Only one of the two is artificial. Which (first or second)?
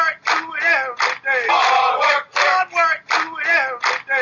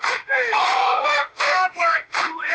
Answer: second